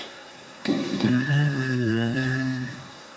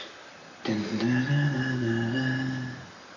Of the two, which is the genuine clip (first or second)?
second